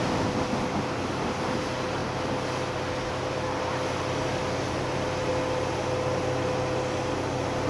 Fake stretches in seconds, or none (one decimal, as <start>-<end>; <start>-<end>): none

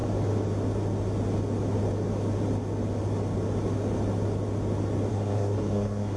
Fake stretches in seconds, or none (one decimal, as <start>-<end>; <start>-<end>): 5.1-6.2

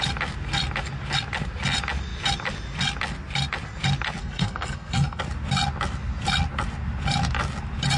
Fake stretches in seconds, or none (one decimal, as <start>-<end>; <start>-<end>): 4.2-5.2

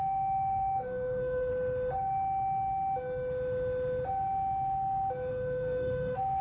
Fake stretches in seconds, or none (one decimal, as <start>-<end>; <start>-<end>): 0.0-1.5; 5.3-6.4

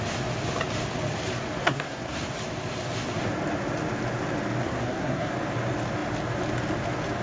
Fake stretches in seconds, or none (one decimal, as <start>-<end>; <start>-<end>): 1.6-2.2; 4.6-5.3

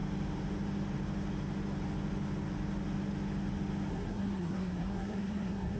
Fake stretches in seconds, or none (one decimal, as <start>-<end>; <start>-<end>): 3.9-5.8

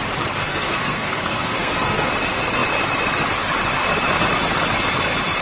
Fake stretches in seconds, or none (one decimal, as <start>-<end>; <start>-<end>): 0.4-2.1

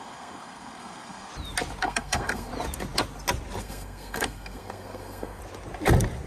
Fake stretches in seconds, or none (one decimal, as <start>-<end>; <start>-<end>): 0.0-1.3; 1.8-2.5; 3.6-5.4